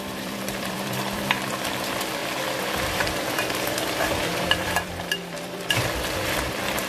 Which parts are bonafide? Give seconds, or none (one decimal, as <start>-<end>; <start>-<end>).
none